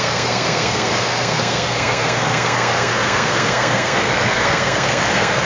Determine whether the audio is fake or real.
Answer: fake